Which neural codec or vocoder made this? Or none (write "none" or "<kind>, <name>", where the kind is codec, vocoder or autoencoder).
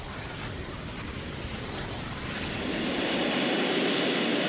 none